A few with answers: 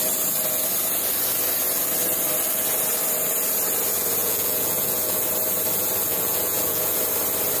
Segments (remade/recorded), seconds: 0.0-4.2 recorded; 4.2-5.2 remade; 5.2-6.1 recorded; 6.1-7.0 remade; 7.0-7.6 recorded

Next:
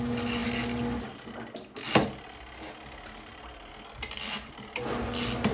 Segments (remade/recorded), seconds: 0.0-5.5 recorded

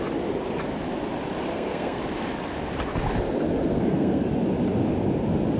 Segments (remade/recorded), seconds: 0.0-1.5 recorded; 1.5-2.0 remade; 2.0-3.7 recorded; 3.7-4.3 remade; 4.3-5.6 recorded

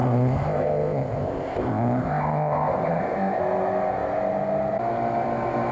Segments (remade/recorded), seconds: 0.0-3.4 remade; 3.4-5.7 recorded